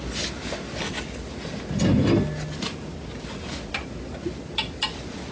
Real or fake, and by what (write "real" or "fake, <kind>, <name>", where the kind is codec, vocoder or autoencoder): real